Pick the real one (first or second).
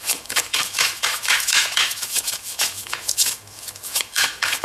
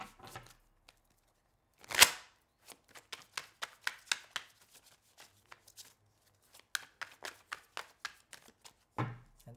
second